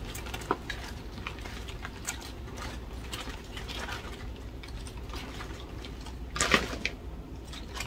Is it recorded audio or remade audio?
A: recorded